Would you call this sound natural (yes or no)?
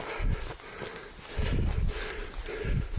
yes